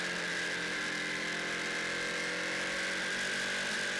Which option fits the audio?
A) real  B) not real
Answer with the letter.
A